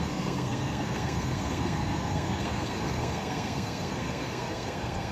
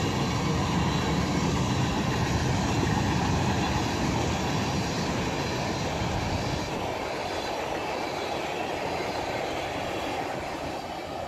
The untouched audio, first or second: second